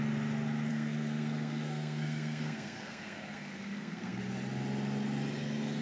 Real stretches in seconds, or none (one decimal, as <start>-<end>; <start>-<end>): 0.0-0.7; 4.2-5.8

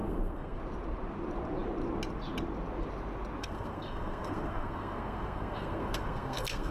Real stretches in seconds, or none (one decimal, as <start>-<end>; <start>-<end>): 0.6-3.4

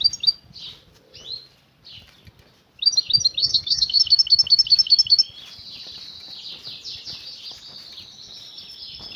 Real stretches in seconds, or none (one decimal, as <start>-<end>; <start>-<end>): 0.0-3.4; 4.0-9.2

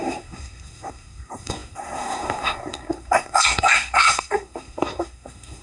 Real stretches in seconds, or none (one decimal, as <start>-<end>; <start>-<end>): none

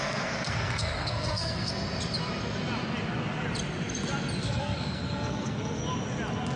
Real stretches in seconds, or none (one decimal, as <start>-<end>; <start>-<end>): 1.7-4.4; 5.8-6.6

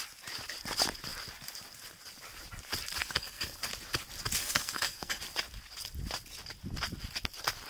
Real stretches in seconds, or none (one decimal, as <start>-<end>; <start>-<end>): 0.0-3.0; 3.6-4.4; 5.2-7.7

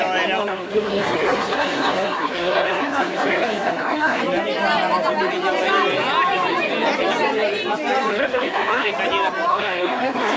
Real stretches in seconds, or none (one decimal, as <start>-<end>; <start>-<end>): 0.0-0.4; 4.2-8.1; 8.9-9.5

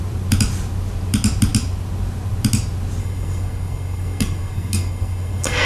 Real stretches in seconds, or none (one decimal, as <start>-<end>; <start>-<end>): 0.0-3.0